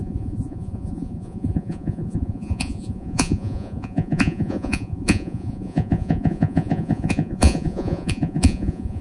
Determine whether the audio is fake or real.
fake